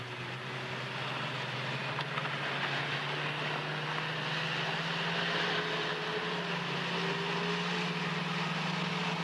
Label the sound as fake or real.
real